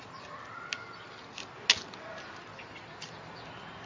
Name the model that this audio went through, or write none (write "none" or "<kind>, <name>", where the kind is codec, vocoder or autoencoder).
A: none